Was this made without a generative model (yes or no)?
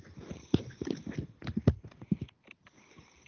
no